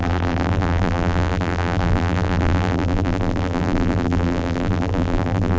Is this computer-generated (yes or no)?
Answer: yes